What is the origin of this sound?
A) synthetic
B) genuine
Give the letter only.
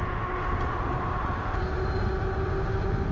B